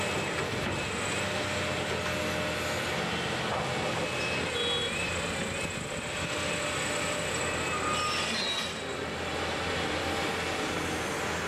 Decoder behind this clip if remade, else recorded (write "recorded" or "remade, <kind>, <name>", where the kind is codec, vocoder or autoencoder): recorded